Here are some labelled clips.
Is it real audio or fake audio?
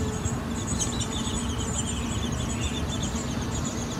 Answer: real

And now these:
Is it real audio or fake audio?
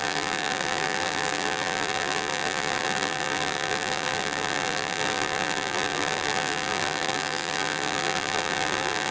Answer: fake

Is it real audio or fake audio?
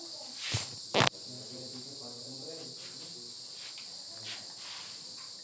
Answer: real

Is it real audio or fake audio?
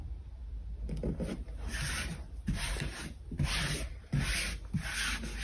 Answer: real